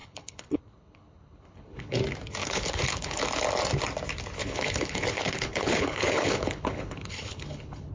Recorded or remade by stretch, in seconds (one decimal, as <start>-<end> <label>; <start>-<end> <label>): 0.0-2.0 remade; 2.0-2.4 recorded; 2.4-3.2 remade; 3.2-4.4 recorded; 4.4-7.9 remade